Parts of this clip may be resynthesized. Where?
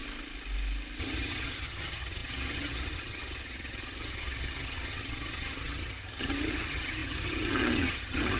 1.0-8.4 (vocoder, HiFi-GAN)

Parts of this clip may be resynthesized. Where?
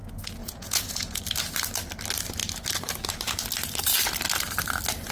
0.4-1.2 (vocoder, Vocos)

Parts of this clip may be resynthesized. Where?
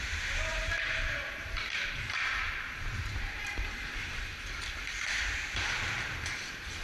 0.5-4.6 (vocoder, BigVGAN v2)